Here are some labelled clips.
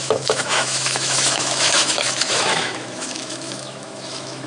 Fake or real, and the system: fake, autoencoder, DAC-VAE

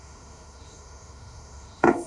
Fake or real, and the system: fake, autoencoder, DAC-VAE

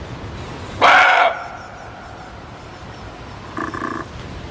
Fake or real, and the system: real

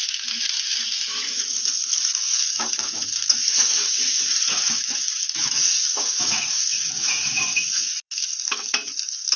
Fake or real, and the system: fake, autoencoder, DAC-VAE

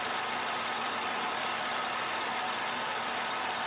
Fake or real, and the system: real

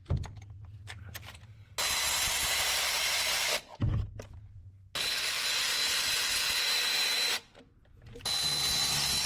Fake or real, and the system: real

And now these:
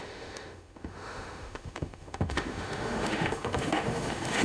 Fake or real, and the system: fake, autoencoder, DAC-VAE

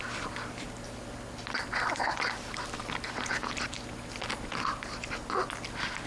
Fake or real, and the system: real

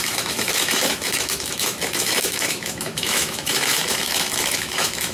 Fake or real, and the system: fake, autoencoder, DAC-VAE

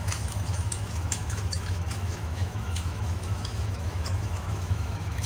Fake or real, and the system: fake, autoencoder, DAC-VAE